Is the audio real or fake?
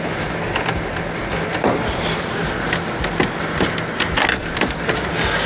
real